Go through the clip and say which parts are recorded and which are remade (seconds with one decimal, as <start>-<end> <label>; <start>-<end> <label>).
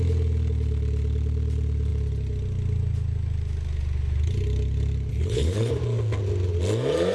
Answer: 0.0-5.1 recorded; 5.1-5.7 remade; 5.7-7.1 recorded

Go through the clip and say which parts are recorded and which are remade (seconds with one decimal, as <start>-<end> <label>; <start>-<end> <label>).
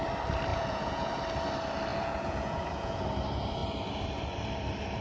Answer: 0.0-0.5 recorded; 0.5-1.1 remade; 1.1-1.9 recorded; 1.9-3.0 remade; 3.0-5.0 recorded